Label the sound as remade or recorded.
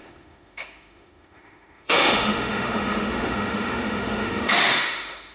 remade